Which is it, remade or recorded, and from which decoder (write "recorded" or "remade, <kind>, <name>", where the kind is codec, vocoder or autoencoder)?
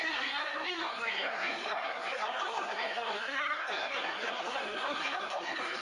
remade, codec, SNAC